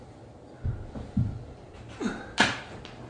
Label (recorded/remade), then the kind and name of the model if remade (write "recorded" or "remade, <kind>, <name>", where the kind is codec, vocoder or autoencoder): recorded